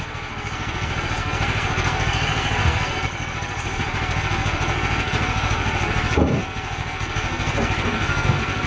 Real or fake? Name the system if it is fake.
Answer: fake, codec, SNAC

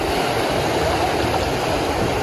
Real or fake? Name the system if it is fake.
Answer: real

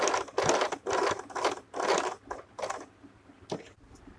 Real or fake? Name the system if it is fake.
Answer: real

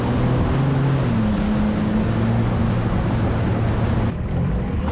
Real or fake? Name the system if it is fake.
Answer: real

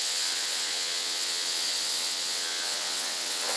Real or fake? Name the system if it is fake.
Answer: fake, vocoder, WaveNeXt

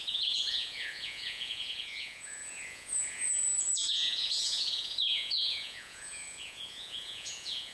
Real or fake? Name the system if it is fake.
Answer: fake, vocoder, Vocos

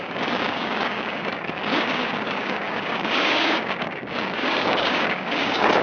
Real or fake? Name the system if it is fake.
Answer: fake, codec, DAC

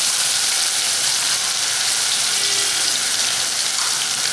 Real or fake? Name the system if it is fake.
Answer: real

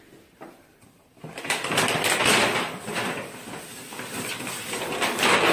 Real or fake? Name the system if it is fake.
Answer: real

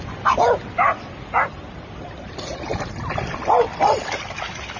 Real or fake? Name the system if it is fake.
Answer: fake, vocoder, BigVGAN v2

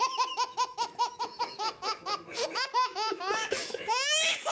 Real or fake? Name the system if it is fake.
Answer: fake, autoencoder, DAC-VAE